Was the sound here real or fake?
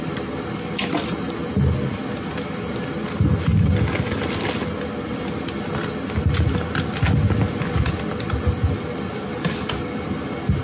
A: real